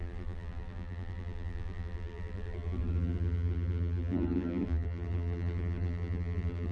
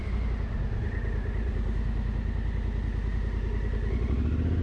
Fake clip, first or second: first